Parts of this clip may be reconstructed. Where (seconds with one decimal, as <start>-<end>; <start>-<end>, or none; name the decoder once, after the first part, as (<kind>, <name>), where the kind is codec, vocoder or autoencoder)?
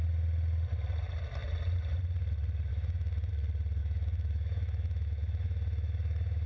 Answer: 2.7-3.3 (autoencoder, DAC-VAE); 3.8-6.5